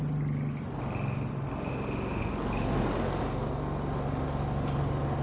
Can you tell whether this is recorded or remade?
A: recorded